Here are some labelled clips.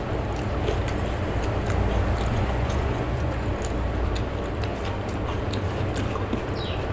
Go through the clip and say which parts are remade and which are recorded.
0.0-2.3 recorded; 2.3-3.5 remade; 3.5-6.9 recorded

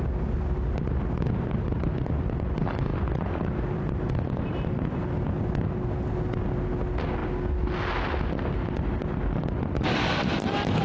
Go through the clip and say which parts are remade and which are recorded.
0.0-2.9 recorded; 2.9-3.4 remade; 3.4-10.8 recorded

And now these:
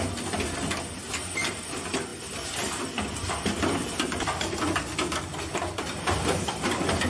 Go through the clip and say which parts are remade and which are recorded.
0.0-7.1 recorded